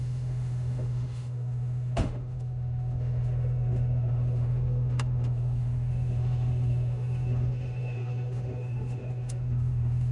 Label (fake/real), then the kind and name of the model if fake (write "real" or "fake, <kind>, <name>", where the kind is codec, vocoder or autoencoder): fake, autoencoder, DAC-VAE